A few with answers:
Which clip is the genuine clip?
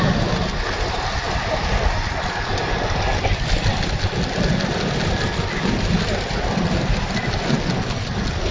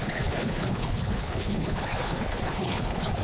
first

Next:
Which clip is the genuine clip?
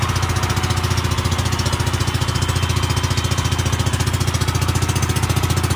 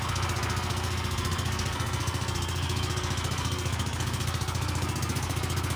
first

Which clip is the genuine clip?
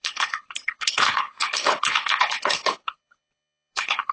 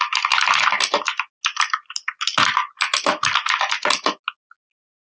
second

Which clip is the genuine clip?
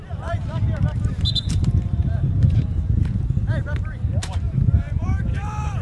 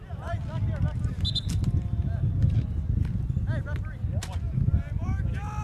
second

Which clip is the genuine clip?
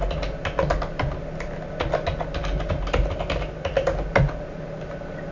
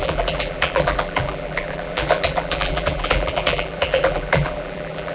first